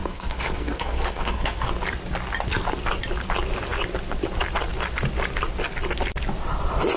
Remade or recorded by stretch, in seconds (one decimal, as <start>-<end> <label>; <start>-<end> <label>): 0.0-1.7 remade; 1.7-7.0 recorded